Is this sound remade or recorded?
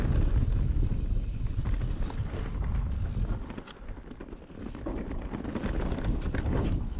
recorded